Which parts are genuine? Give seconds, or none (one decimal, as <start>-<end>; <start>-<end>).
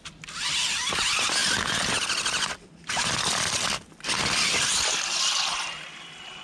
0.0-6.4